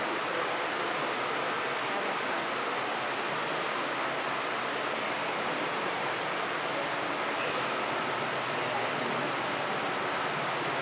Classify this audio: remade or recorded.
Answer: recorded